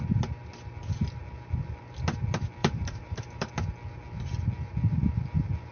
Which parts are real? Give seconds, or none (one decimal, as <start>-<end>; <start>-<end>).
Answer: 0.0-2.6; 3.5-5.7